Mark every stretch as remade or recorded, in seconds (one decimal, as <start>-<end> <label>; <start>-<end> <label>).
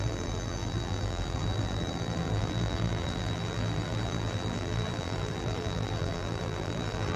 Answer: 0.0-7.2 remade